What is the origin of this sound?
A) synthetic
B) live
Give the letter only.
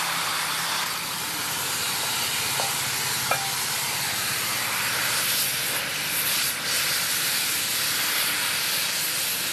B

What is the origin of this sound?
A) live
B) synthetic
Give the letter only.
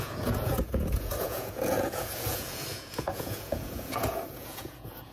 B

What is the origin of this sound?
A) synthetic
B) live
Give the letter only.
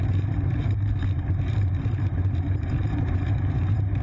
A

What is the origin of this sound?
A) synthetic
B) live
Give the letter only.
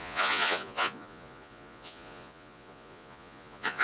A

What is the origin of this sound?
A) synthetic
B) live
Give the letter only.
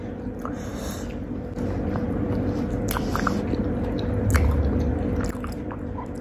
B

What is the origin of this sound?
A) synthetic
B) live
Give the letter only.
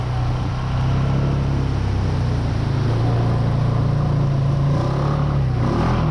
B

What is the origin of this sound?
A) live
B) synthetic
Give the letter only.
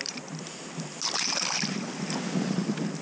A